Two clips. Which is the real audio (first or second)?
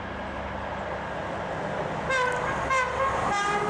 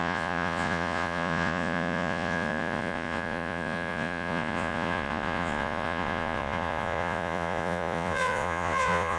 first